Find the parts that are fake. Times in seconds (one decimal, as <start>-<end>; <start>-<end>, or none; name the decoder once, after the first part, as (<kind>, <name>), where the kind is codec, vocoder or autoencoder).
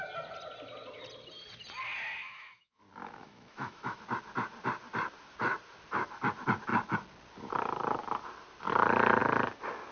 2.2-2.8 (autoencoder, DAC-VAE); 3.2-4.0